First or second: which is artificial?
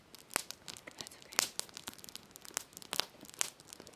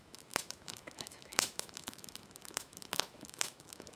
second